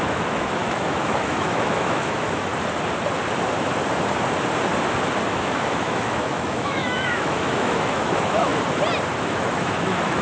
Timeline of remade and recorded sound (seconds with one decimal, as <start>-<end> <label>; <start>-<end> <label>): 0.0-2.5 remade; 2.5-5.3 recorded; 5.3-8.5 remade; 8.5-9.2 recorded; 9.2-10.2 remade